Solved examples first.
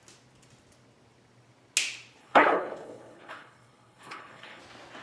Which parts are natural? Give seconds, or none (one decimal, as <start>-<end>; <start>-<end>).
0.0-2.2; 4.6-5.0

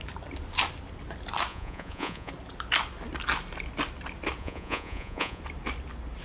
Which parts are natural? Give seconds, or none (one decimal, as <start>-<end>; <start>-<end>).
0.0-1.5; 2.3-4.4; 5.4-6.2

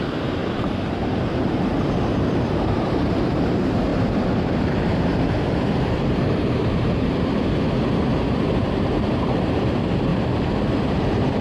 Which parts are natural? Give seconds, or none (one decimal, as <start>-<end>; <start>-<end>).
0.4-1.9

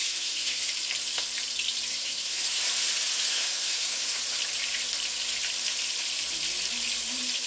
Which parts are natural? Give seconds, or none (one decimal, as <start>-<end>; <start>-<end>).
0.7-1.9; 2.6-3.3; 4.2-7.5

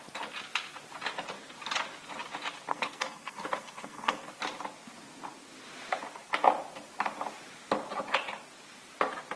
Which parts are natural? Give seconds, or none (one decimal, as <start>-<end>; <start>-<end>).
0.0-2.7; 4.3-9.4

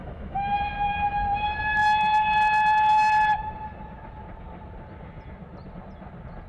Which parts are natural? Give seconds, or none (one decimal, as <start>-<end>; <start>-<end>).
0.6-6.5